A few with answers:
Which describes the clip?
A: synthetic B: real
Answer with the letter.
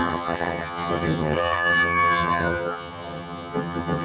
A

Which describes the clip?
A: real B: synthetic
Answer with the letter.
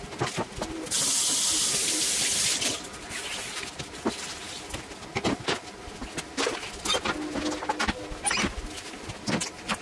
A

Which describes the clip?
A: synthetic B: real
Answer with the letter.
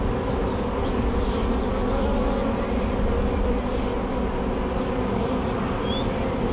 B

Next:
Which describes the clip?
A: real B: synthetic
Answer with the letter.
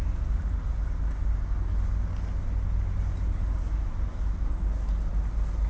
A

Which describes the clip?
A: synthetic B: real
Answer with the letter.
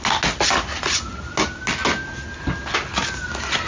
B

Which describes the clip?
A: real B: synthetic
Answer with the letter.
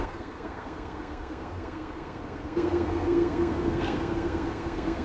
B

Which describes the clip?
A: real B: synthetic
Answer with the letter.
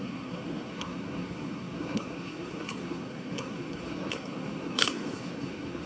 B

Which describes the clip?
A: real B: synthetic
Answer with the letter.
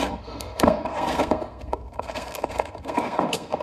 B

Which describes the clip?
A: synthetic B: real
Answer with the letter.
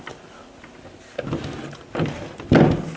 B